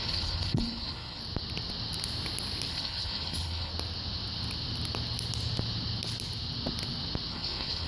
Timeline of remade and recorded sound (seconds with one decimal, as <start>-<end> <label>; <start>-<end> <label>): 0.0-1.2 remade; 1.2-2.7 recorded; 2.7-3.7 remade; 3.7-7.3 recorded; 7.3-7.9 remade